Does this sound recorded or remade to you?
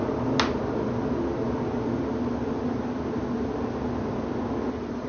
recorded